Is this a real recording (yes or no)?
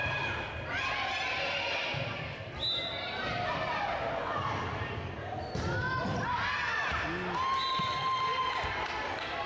yes